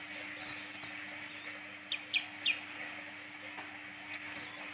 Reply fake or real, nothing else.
real